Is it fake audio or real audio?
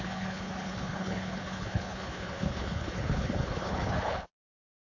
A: fake